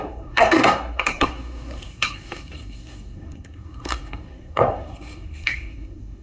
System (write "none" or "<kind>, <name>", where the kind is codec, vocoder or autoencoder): codec, SNAC